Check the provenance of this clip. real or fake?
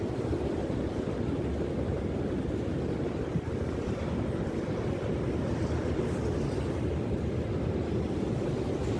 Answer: real